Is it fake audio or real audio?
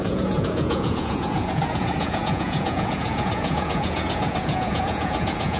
fake